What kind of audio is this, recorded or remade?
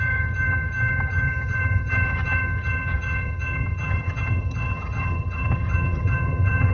remade